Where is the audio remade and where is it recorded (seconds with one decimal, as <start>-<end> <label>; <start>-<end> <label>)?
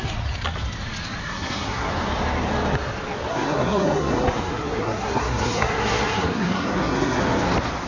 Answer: 0.0-1.2 recorded; 1.2-1.9 remade; 1.9-3.3 recorded; 3.3-7.2 remade; 7.2-7.9 recorded